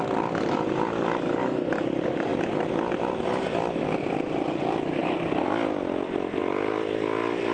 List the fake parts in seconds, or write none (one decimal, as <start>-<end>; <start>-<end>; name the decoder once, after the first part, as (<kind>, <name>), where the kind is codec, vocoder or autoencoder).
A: none